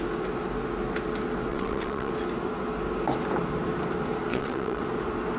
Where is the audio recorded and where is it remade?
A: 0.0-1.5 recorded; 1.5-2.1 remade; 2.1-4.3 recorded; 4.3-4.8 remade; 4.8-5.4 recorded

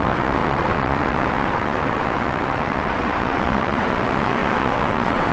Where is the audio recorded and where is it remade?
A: 0.0-5.3 remade

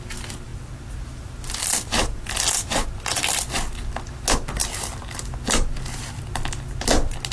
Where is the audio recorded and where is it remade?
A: 0.0-7.3 recorded

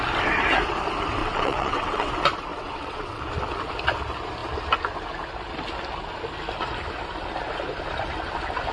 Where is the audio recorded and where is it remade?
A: 0.0-1.2 recorded; 1.2-2.1 remade; 2.1-2.5 recorded; 2.5-3.2 remade; 3.2-8.7 recorded